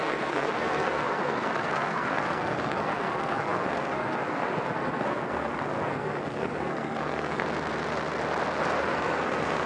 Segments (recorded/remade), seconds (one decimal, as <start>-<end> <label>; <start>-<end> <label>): 0.0-7.4 remade; 7.4-8.8 recorded; 8.8-9.7 remade